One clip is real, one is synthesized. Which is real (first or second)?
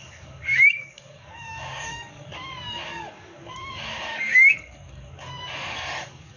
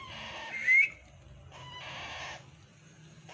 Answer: second